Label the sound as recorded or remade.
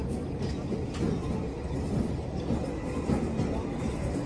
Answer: recorded